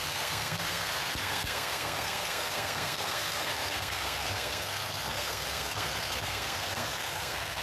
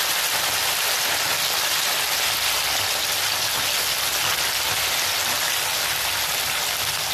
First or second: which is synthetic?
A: first